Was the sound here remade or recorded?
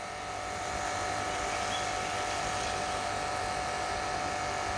recorded